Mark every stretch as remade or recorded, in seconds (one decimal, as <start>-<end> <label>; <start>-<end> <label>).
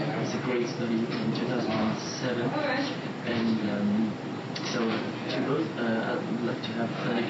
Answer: 0.0-0.8 recorded; 0.8-5.1 remade; 5.1-7.3 recorded